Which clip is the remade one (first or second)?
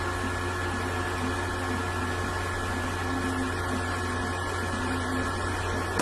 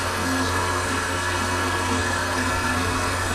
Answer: second